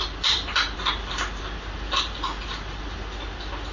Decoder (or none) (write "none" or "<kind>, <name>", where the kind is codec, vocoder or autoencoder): none